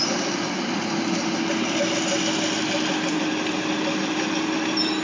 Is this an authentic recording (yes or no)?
yes